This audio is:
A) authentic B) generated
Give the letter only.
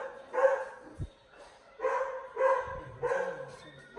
A